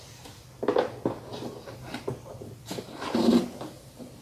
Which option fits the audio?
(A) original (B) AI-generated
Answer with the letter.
B